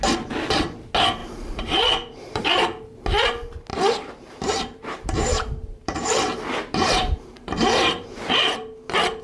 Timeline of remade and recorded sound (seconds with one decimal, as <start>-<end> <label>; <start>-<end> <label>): 0.0-1.2 recorded; 1.2-2.6 remade; 2.6-3.7 recorded; 3.7-8.3 remade; 8.3-9.2 recorded